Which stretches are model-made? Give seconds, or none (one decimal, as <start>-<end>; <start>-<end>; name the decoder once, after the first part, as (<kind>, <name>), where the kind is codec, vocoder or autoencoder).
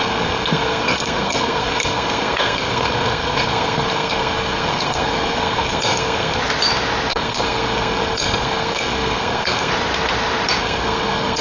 0.0-6.4 (codec, SNAC); 7.1-9.7; 10.6-11.4